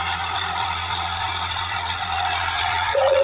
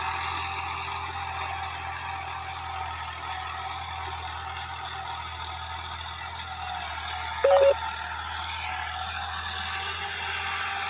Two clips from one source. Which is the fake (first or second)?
first